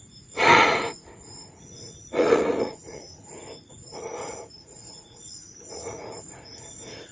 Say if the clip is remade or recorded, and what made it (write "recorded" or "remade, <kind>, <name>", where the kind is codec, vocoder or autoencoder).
remade, vocoder, Vocos